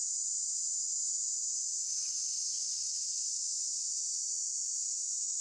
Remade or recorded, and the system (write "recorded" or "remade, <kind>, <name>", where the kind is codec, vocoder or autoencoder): recorded